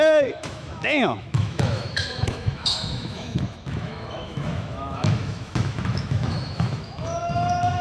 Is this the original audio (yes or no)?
no